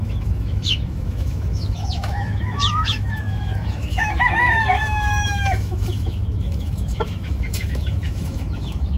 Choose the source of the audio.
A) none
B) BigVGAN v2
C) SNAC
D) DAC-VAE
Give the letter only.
D